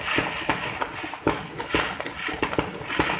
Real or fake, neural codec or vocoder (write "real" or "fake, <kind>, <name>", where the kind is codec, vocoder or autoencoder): real